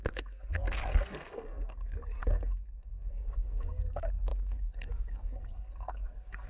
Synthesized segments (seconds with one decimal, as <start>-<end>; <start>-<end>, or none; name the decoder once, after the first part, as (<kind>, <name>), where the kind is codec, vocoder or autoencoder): 0.0-6.5 (codec, SNAC)

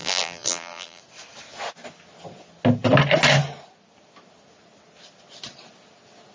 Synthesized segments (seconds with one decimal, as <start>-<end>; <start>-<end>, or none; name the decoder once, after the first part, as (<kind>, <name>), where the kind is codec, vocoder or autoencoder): 0.0-1.0 (vocoder, BigVGAN v2)

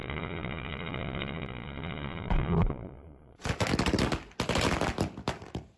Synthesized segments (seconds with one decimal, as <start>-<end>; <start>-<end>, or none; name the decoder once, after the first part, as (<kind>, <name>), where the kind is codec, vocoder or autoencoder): 0.0-3.5 (vocoder, Vocos)

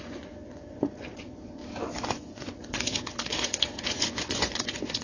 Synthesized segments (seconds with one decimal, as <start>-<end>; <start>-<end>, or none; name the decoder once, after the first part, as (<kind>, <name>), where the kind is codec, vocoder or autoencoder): 0.0-1.6 (vocoder, Vocos); 2.1-5.0

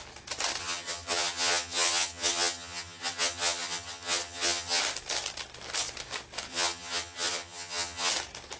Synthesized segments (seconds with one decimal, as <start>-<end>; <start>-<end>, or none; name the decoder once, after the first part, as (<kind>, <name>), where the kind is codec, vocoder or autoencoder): 0.6-4.8 (vocoder, HiFi-GAN); 6.5-8.1